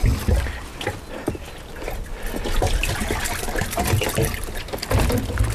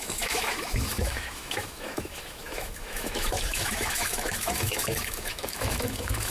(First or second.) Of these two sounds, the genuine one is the first